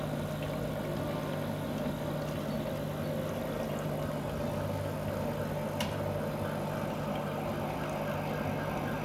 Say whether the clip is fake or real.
real